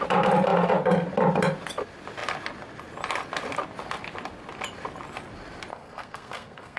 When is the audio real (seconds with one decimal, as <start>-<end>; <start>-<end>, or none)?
0.0-5.7